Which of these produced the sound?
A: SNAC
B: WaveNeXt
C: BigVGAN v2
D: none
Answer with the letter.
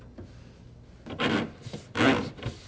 D